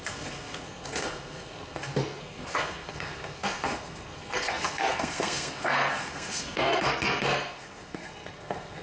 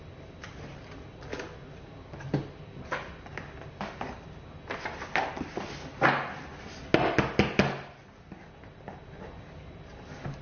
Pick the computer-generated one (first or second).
first